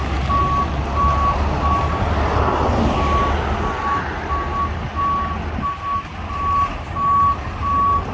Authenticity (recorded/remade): recorded